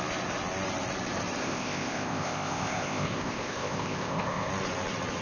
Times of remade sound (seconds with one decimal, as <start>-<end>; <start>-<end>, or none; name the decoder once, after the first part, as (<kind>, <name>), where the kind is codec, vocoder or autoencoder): 1.4-4.5 (codec, ZipCodec)

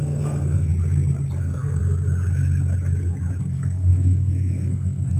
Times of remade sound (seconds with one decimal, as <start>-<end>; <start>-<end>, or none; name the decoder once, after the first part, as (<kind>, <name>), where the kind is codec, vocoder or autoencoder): 0.0-0.7 (codec, SNAC); 1.4-1.8; 3.4-5.2

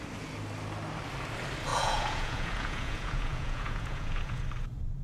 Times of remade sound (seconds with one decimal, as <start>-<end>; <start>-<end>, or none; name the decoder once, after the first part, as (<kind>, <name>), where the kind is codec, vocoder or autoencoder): 1.7-4.4 (vocoder, Vocos)

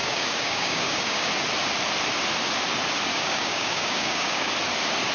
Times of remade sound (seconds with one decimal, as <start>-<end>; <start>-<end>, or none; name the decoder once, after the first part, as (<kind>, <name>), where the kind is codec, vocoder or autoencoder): 0.0-1.3 (codec, DAC); 3.1-4.5

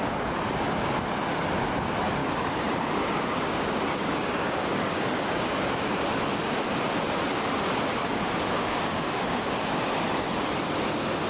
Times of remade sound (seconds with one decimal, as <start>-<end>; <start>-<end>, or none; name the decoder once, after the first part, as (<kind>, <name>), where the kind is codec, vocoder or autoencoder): 2.2-5.8 (codec, DAC); 8.0-9.8